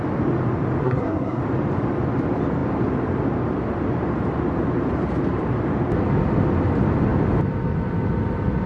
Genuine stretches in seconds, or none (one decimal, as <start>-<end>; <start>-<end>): 0.0-0.8; 1.4-8.7